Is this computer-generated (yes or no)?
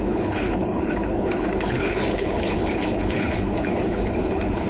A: yes